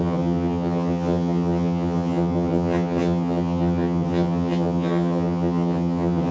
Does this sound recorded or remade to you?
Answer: remade